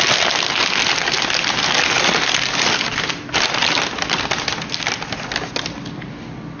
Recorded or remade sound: recorded